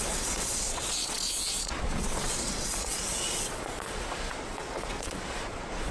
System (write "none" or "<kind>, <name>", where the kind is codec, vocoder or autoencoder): vocoder, Vocos